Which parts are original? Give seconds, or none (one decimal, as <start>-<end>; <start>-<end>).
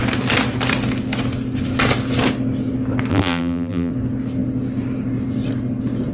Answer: 0.0-3.1; 3.9-6.1